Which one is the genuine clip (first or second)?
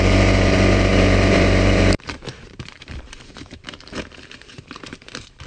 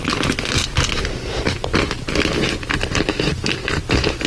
second